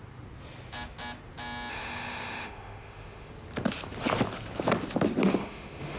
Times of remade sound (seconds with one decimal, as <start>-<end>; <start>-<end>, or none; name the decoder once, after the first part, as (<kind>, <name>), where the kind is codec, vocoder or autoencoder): 1.7-3.3 (autoencoder, DAC-VAE); 5.4-6.0